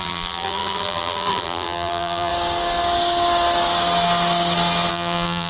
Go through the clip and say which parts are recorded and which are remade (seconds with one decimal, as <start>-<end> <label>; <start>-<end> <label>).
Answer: 0.0-2.3 remade; 2.3-4.9 recorded; 4.9-5.5 remade

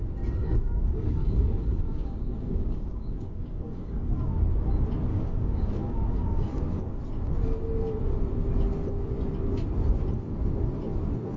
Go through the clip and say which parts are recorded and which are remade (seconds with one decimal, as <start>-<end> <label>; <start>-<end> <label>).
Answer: 0.0-0.4 recorded; 0.4-4.3 remade; 4.3-5.1 recorded; 5.1-6.9 remade; 6.9-11.4 recorded